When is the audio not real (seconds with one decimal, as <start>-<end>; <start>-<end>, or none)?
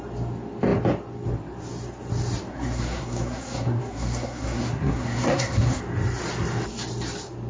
2.5-5.8